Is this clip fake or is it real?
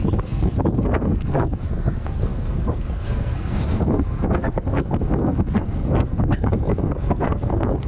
fake